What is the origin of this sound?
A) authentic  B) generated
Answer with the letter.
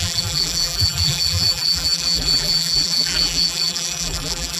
B